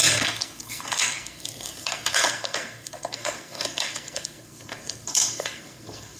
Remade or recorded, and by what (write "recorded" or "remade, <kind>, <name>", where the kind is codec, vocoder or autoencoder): remade, codec, SNAC